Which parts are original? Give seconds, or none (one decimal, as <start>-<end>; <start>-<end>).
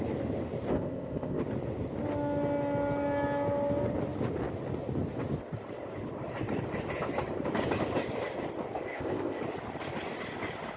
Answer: 0.0-0.7; 1.4-8.9; 9.4-10.8